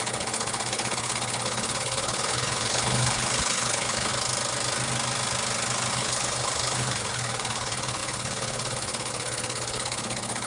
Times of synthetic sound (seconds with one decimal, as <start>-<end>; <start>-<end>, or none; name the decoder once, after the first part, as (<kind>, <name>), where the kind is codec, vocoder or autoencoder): 0.0-4.1 (codec, HILCodec); 5.9-10.5

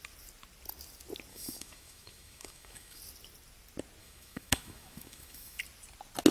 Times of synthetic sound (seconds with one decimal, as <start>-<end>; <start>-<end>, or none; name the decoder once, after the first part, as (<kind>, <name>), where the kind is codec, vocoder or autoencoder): 1.3-3.0 (autoencoder, DAC-VAE); 4.0-5.6

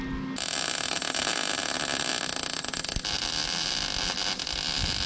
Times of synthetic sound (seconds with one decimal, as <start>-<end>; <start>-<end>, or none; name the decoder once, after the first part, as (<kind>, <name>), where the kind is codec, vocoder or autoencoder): none

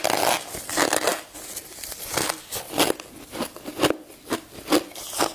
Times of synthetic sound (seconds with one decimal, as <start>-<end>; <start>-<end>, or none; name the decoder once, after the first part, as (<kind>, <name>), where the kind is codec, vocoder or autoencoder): none

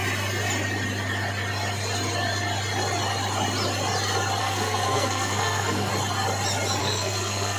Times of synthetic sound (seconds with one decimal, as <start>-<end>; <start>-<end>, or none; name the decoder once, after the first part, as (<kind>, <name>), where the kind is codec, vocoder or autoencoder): 4.4-5.9 (codec, SNAC); 6.8-7.6

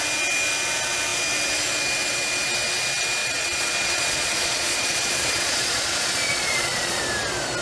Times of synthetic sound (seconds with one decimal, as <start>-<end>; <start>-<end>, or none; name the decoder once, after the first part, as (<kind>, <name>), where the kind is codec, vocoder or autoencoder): 3.2-7.0 (vocoder, Vocos)

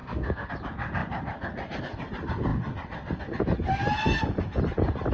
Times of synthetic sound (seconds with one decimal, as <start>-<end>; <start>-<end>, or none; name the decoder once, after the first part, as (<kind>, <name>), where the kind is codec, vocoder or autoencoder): 0.0-0.5 (codec, SNAC)